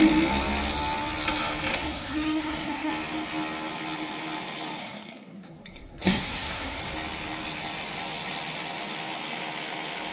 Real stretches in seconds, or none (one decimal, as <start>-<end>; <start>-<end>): 0.0-1.7; 2.9-4.8; 6.8-10.1